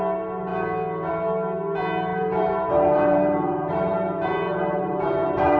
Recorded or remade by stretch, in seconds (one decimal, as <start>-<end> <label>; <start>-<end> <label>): 0.0-2.1 recorded; 2.1-5.6 remade